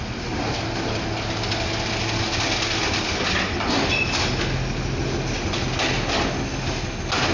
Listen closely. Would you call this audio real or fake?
real